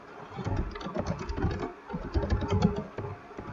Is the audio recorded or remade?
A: recorded